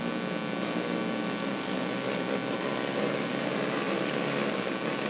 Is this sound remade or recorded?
recorded